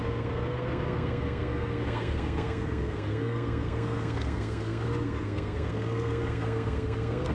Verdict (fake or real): fake